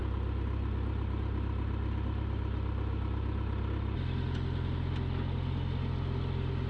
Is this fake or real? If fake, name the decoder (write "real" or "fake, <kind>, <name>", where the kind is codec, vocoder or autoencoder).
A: real